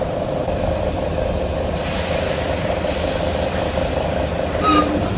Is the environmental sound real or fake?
fake